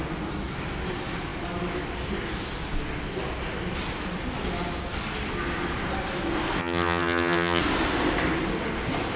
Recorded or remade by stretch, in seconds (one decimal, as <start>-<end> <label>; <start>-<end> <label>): 0.0-6.6 recorded; 6.6-7.6 remade; 7.6-9.2 recorded